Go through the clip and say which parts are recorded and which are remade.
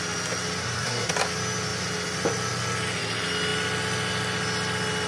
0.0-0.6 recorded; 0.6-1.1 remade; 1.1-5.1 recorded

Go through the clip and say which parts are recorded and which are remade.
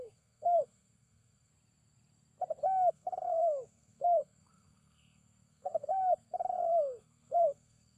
0.0-1.5 remade; 1.5-2.9 recorded; 2.9-8.0 remade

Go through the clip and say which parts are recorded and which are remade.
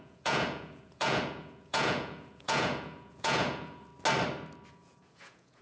0.0-3.9 remade; 3.9-4.7 recorded; 4.7-5.6 remade